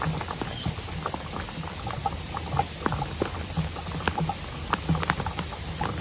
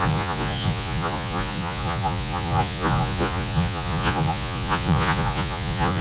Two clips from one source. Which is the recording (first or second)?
first